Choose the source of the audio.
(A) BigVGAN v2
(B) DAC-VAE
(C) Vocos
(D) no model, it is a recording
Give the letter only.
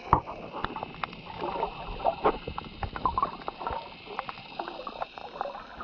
D